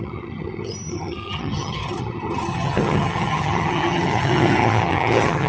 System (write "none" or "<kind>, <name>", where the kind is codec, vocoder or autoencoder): vocoder, HiFi-GAN